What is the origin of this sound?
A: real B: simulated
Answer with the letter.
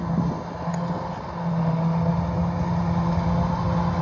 A